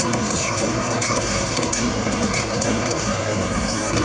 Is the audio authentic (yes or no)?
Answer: no